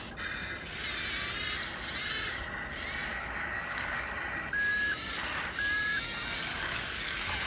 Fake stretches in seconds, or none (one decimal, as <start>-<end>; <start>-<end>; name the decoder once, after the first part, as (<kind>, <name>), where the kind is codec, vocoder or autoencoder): 3.1-4.1 (codec, DAC); 6.5-7.5